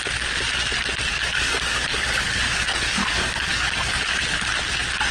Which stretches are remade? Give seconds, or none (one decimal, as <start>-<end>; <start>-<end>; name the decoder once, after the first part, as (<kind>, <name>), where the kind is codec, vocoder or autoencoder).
1.1-4.2 (codec, DAC)